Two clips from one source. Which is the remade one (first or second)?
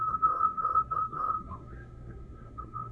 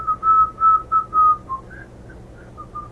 first